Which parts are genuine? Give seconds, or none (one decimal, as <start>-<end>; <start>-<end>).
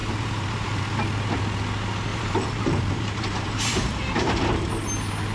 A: 0.8-2.1; 4.7-5.3